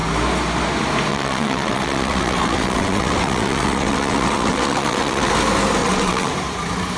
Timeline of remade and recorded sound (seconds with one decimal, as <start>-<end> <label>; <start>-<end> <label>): 0.0-1.1 recorded; 1.1-5.3 remade; 5.3-5.8 recorded; 5.8-6.3 remade; 6.3-7.0 recorded